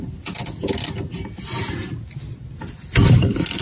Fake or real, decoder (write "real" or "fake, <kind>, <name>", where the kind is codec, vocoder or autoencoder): real